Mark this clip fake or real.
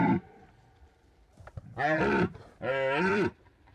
fake